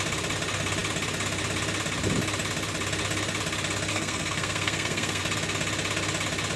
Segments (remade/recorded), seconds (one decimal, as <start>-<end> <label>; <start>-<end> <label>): 0.0-3.9 recorded; 3.9-5.2 remade; 5.2-6.6 recorded